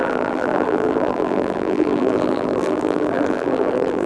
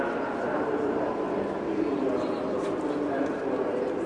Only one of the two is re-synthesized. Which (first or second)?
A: first